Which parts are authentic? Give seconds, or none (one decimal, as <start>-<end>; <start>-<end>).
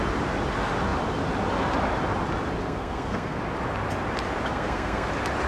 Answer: 0.0-2.6; 3.4-4.5; 5.1-5.5